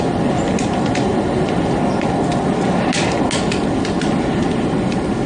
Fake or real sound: real